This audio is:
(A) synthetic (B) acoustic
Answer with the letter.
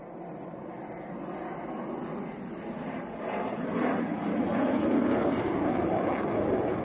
B